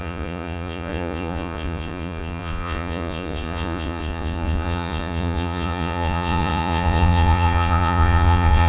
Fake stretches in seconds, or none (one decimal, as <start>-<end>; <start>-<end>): 0.0-8.7